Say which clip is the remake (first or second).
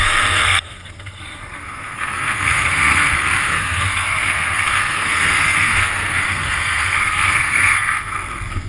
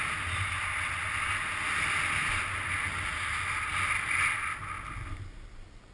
first